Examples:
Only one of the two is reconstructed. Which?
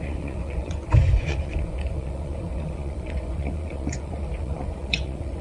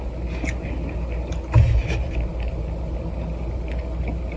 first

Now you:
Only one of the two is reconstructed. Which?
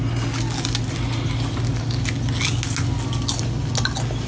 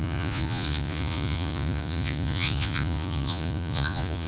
second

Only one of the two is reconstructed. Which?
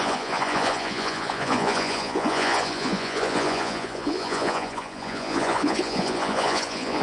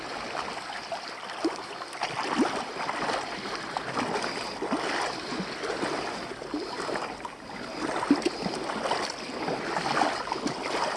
first